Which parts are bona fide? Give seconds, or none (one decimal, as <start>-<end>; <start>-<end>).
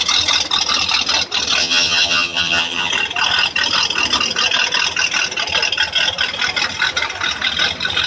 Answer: 0.0-1.6; 2.9-8.1